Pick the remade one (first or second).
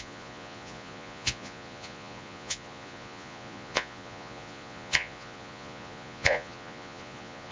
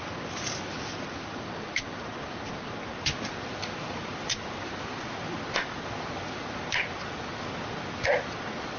first